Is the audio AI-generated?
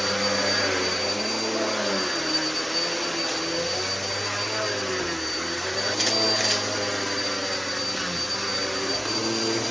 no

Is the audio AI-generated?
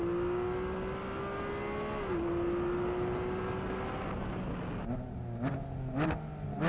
no